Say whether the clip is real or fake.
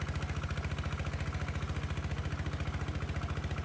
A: real